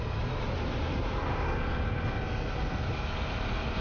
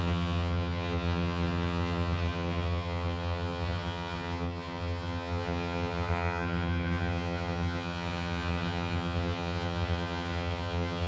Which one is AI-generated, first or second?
second